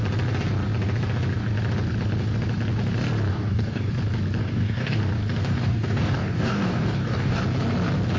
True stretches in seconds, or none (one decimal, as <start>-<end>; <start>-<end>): 0.0-3.3; 3.9-4.4; 5.0-5.4; 7.4-8.2